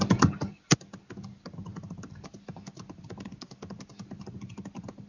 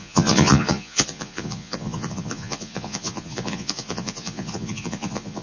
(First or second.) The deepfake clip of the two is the second